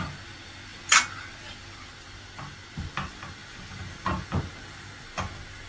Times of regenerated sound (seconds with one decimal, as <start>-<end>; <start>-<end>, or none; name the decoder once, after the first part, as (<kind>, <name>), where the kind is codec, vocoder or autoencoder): none